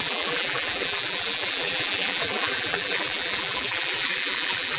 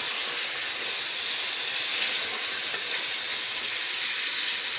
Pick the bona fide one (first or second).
second